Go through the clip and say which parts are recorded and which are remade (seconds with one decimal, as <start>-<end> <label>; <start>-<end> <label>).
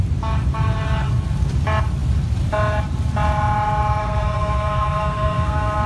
0.0-4.0 recorded; 4.0-5.9 remade